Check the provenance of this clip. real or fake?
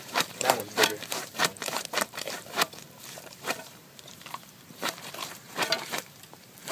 fake